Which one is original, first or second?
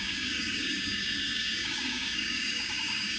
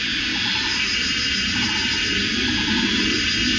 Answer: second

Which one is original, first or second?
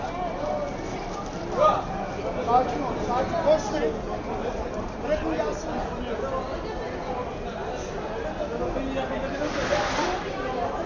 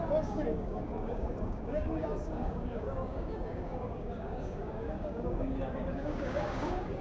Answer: first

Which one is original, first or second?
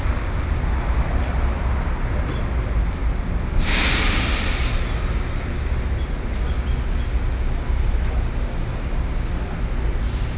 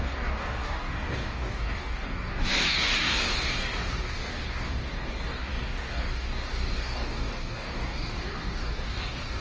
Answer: first